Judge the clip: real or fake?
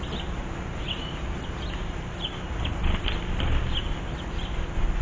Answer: real